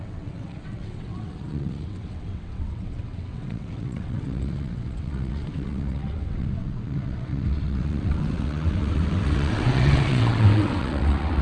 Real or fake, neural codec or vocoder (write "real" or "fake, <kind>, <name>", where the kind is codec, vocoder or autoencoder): fake, vocoder, WaveNeXt